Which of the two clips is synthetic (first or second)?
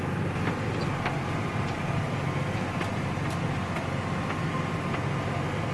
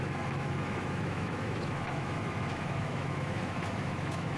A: second